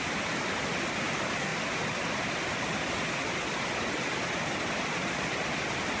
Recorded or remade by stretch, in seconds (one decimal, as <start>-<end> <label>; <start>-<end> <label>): 0.0-6.0 recorded